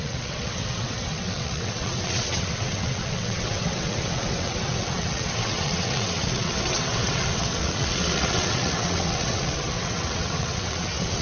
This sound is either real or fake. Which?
fake